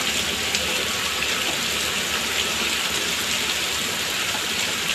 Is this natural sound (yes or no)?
yes